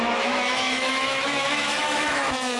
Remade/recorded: remade